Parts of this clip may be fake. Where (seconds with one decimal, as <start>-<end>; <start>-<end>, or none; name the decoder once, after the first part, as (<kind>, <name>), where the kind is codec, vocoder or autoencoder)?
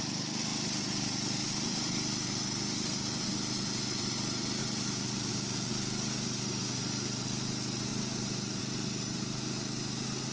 none